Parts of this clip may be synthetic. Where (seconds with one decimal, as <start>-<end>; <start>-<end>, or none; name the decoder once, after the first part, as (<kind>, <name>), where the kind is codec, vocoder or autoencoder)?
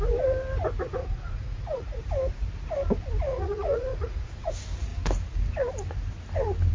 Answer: 1.0-2.0 (vocoder, Vocos); 3.3-4.5